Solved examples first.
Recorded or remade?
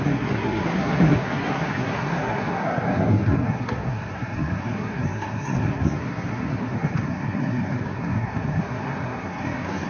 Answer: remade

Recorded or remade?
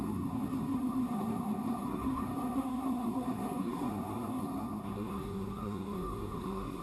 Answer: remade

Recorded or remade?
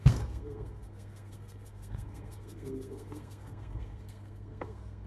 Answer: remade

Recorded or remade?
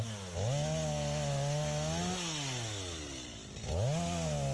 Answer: recorded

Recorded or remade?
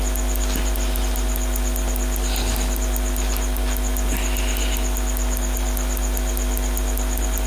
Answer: recorded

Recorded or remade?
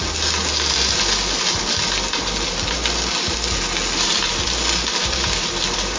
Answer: recorded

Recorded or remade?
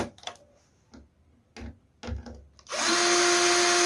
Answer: recorded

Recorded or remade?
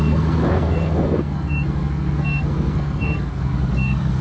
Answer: remade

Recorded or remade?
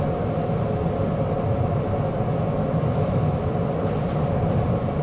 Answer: recorded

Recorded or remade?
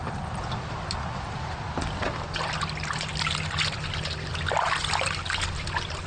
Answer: recorded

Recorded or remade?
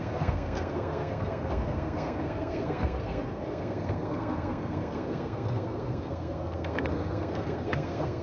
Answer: remade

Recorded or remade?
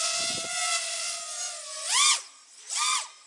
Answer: recorded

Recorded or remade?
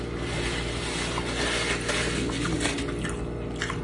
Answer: recorded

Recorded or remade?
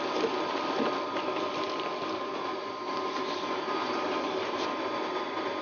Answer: recorded